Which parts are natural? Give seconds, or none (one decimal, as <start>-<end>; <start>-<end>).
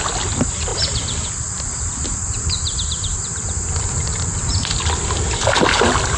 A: 0.0-0.7; 4.4-6.2